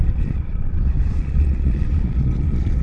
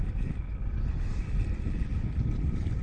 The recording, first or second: second